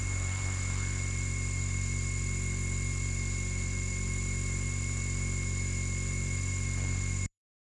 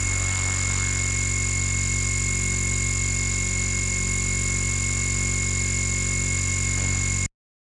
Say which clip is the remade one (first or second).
first